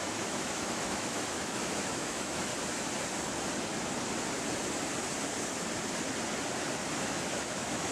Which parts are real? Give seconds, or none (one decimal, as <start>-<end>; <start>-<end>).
2.5-6.9